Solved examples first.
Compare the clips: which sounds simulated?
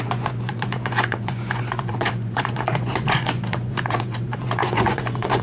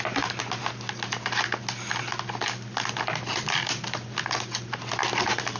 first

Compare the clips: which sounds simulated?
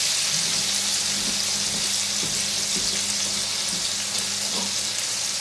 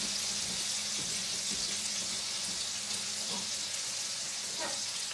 second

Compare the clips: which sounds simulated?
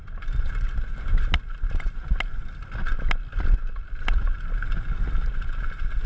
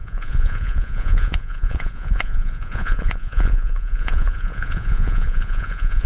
second